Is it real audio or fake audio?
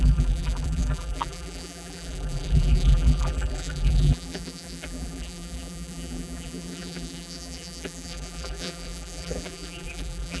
fake